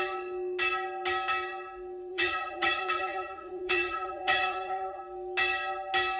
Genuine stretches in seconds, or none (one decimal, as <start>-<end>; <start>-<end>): 0.0-2.1; 5.0-6.2